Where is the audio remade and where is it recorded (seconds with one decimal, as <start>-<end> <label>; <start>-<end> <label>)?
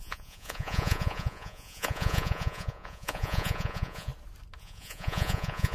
0.0-4.1 remade; 4.1-4.6 recorded; 4.6-5.7 remade